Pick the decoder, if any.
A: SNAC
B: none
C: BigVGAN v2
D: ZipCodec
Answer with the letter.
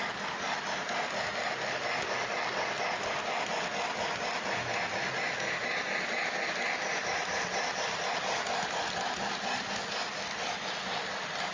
B